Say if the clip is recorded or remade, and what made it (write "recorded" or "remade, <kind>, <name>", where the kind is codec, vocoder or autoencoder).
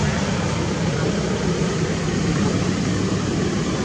remade, vocoder, BigVGAN v2